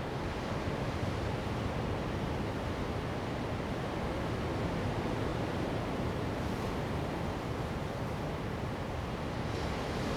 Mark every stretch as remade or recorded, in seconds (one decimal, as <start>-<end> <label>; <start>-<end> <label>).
0.0-5.3 recorded; 5.3-5.9 remade; 5.9-10.2 recorded